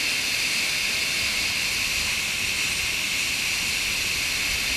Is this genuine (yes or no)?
yes